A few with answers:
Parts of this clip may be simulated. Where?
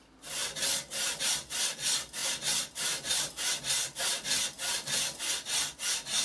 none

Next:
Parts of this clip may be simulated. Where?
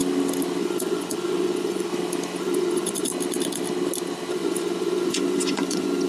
0.6-1.9 (vocoder, Vocos); 2.4-3.1; 4.3-6.1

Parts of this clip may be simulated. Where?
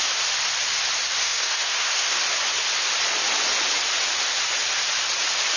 1.2-2.2 (codec, SNAC)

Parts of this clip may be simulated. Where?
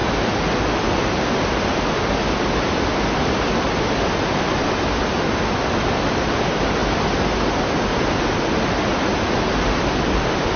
none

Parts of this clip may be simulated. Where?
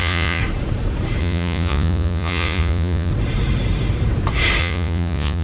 0.0-0.4 (vocoder, Vocos); 1.2-3.1; 4.6-5.4